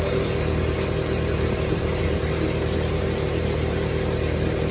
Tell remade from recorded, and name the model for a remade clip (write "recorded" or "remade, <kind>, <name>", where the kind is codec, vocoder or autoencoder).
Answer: remade, vocoder, BigVGAN v2